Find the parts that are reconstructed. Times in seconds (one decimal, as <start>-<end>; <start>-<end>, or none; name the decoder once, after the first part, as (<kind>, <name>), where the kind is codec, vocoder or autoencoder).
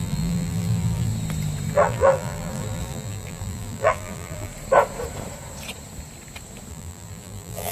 0.0-1.1 (vocoder, BigVGAN v2); 1.7-4.5; 6.7-7.7